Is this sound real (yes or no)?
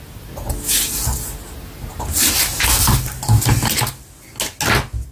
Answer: yes